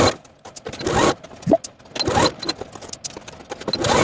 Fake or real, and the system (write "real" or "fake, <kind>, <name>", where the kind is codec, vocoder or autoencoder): real